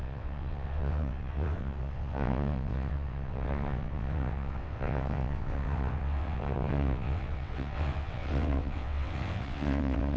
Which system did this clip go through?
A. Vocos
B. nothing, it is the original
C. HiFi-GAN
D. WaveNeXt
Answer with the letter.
D